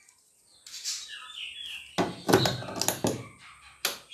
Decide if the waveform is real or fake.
real